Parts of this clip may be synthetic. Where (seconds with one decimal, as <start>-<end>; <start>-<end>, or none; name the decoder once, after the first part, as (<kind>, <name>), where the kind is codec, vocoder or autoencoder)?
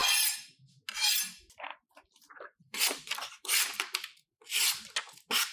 1.7-4.6 (vocoder, BigVGAN v2)